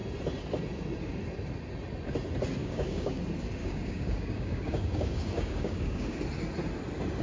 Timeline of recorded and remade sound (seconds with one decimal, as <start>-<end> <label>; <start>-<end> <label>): 0.0-2.6 recorded; 2.6-3.2 remade; 3.2-3.6 recorded; 3.6-6.2 remade; 6.2-7.2 recorded